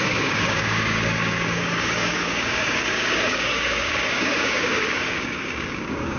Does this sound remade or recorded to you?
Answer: remade